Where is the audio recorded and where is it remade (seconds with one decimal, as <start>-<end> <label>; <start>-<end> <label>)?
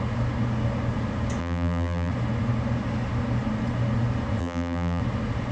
0.0-1.4 recorded; 1.4-2.1 remade; 2.1-4.4 recorded; 4.4-5.0 remade; 5.0-5.5 recorded